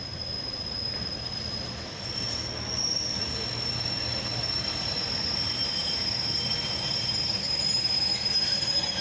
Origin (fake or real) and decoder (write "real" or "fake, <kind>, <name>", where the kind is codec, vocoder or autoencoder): real